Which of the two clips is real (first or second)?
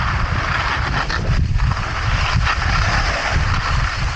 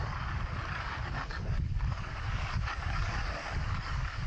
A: first